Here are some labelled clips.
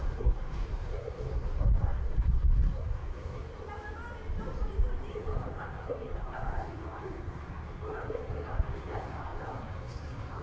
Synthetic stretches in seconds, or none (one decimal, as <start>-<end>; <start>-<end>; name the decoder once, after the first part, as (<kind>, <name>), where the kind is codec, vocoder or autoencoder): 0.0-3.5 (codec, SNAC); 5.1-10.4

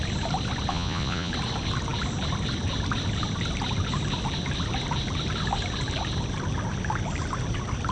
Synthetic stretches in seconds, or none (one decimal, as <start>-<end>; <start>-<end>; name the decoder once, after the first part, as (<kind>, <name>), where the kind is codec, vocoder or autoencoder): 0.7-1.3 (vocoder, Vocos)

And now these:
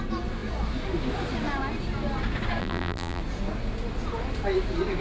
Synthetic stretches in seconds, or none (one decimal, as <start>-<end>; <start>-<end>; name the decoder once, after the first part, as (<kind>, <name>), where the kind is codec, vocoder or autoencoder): 2.6-3.2 (vocoder, BigVGAN v2)

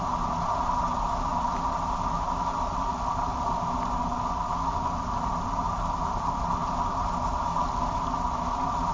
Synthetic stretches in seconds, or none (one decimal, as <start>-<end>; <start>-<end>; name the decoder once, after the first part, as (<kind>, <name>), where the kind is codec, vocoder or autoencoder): none

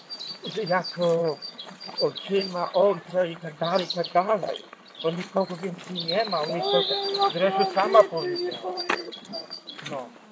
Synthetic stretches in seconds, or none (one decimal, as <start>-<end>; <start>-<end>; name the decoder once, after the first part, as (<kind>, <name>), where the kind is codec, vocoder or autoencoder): 1.2-5.5 (vocoder, HiFi-GAN); 8.7-9.9

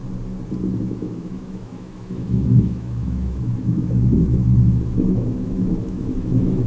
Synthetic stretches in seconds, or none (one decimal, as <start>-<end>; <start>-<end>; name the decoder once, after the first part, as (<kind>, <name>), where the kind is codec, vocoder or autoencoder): 0.8-6.7 (autoencoder, DAC-VAE)